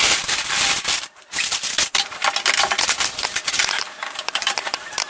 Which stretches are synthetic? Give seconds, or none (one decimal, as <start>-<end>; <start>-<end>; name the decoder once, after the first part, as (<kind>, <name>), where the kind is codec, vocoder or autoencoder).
0.0-2.2 (vocoder, BigVGAN v2); 3.5-5.1